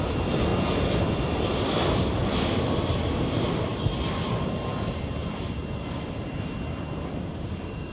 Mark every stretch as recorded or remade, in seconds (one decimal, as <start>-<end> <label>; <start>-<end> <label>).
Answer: 0.0-0.5 remade; 0.5-1.0 recorded; 1.0-3.7 remade; 3.7-4.3 recorded; 4.3-7.9 remade